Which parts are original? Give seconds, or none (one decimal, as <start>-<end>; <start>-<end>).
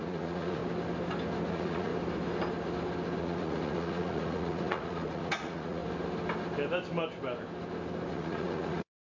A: 0.6-1.5; 1.9-3.2; 5.8-8.1